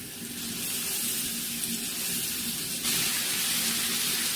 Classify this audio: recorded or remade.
recorded